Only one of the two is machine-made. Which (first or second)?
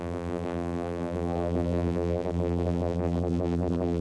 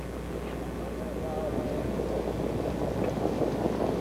first